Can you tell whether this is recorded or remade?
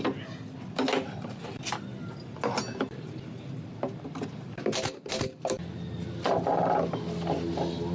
recorded